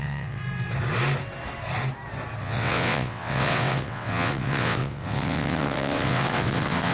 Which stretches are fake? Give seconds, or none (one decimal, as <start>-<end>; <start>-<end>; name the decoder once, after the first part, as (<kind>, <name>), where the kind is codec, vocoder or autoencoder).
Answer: 0.0-0.4 (vocoder, WaveNeXt); 2.4-6.9